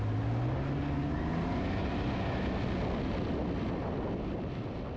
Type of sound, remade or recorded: recorded